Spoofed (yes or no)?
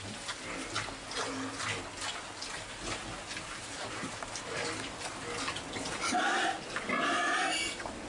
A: no